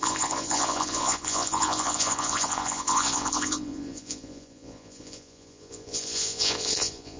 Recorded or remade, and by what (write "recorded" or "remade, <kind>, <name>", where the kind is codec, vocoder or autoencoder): remade, vocoder, Vocos